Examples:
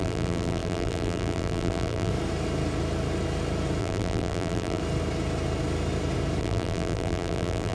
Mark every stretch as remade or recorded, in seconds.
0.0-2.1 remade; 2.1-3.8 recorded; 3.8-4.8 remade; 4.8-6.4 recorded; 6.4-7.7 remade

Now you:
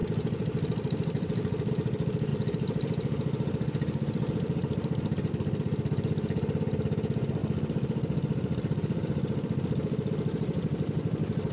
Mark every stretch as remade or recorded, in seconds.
0.0-1.7 remade; 1.7-2.3 recorded; 2.3-5.3 remade; 5.3-7.4 recorded; 7.4-10.1 remade; 10.1-11.5 recorded

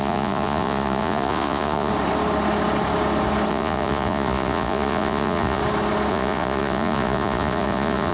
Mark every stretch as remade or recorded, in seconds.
0.0-1.9 remade; 1.9-3.5 recorded; 3.5-5.6 remade; 5.6-6.1 recorded; 6.1-8.1 remade